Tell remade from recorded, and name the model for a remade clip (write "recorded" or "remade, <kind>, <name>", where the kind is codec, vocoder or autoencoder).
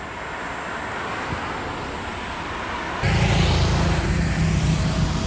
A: recorded